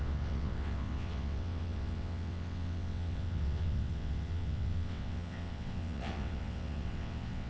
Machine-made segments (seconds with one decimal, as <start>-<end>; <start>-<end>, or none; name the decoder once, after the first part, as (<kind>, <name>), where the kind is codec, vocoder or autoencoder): 0.0-7.5 (vocoder, WaveNeXt)